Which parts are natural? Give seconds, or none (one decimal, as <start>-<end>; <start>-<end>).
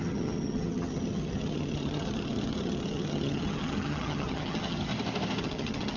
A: 4.9-5.4